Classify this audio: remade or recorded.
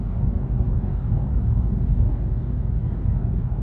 remade